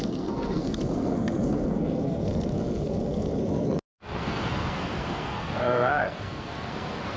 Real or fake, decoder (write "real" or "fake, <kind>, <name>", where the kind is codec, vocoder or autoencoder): fake, codec, SNAC